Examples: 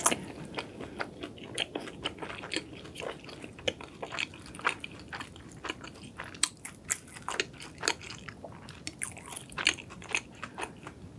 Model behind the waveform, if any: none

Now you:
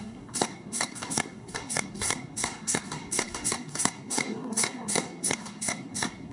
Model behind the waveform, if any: codec, SNAC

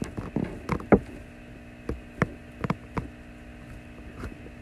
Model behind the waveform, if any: none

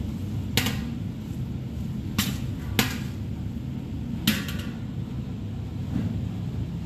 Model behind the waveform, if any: none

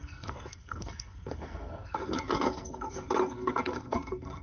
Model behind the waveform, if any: codec, SNAC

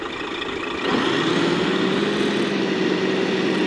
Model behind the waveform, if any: none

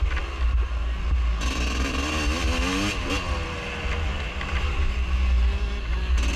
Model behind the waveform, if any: none